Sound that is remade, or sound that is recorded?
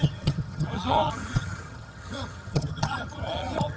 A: remade